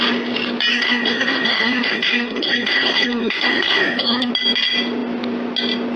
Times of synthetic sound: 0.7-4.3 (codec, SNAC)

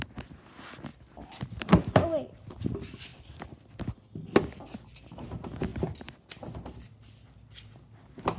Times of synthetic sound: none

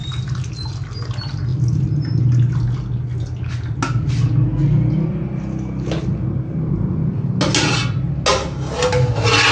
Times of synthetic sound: none